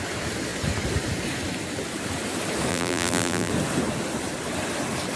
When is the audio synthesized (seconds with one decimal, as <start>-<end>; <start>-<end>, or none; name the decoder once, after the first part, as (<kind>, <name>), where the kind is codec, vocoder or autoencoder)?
2.7-3.5 (vocoder, BigVGAN v2)